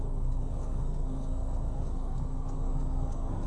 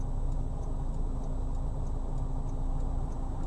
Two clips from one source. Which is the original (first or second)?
second